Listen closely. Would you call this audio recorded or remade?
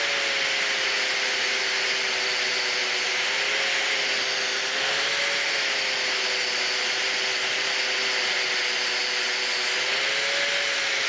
recorded